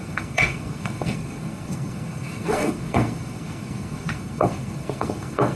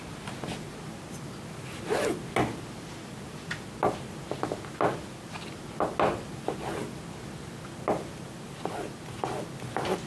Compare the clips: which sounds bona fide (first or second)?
second